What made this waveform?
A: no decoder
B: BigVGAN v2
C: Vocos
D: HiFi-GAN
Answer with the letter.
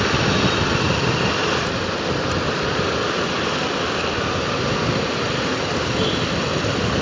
A